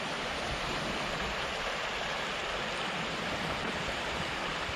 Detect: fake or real fake